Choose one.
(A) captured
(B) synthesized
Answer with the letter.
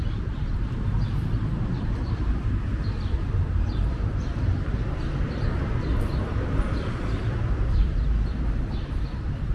B